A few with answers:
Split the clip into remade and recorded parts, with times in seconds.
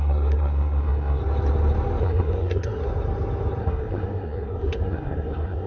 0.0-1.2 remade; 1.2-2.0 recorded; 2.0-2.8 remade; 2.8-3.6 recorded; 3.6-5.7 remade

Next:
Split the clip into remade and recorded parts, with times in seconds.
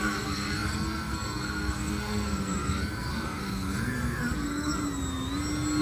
0.0-4.8 remade; 4.8-5.8 recorded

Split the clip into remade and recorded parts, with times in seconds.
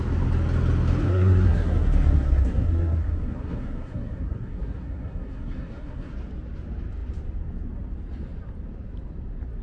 0.0-1.1 recorded; 1.1-6.1 remade; 6.1-9.6 recorded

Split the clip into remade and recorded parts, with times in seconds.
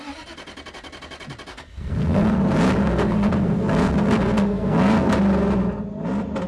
0.0-1.5 recorded; 1.5-2.4 remade; 2.4-2.8 recorded; 2.8-5.1 remade; 5.1-6.5 recorded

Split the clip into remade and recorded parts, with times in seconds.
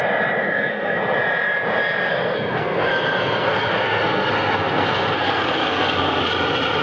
0.0-0.4 recorded; 0.4-1.0 remade; 1.0-2.1 recorded; 2.1-6.2 remade; 6.2-6.8 recorded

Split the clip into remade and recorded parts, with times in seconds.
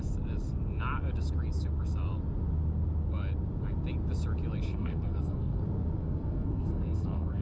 0.0-4.7 recorded; 4.7-5.6 remade; 5.6-6.0 recorded; 6.0-7.4 remade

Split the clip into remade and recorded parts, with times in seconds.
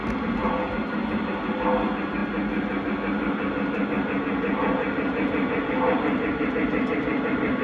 0.0-7.6 recorded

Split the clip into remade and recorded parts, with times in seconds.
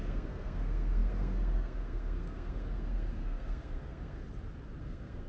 0.0-4.2 remade; 4.2-4.8 recorded; 4.8-5.3 remade